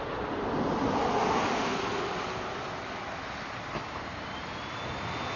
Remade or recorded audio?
recorded